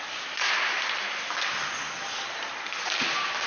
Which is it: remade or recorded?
recorded